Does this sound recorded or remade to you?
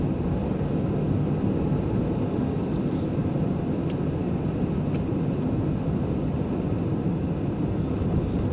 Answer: recorded